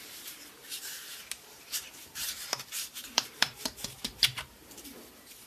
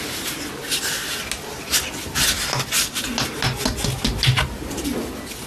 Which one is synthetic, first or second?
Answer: first